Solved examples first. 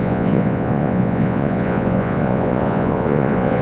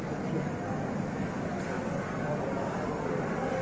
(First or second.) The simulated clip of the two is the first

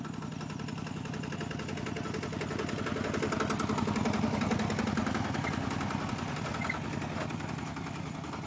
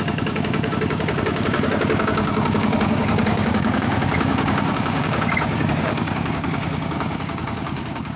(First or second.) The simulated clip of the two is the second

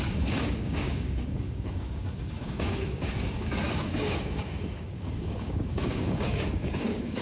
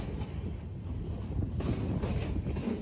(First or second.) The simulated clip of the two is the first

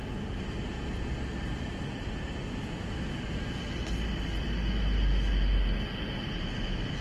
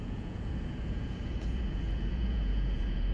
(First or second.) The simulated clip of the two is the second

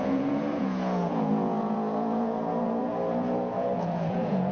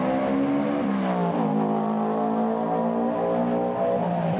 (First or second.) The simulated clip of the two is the first